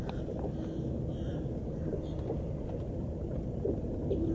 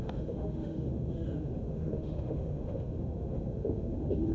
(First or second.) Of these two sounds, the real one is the first